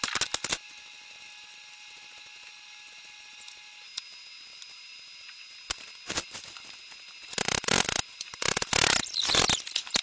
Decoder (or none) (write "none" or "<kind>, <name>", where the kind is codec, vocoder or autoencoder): none